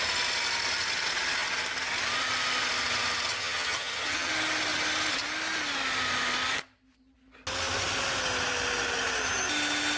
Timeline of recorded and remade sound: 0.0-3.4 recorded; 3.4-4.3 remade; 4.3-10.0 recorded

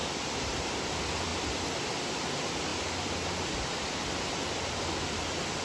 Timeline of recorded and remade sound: 0.0-0.9 remade; 0.9-2.7 recorded; 2.7-4.4 remade; 4.4-5.6 recorded